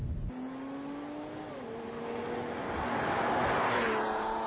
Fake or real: real